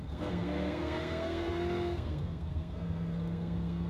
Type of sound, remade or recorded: remade